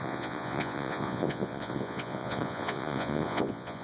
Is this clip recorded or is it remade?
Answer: remade